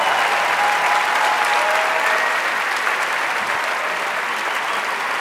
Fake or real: real